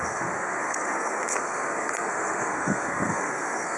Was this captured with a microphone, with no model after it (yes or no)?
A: no